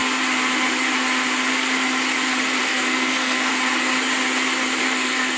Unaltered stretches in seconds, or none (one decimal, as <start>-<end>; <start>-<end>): 0.0-2.6; 3.5-4.8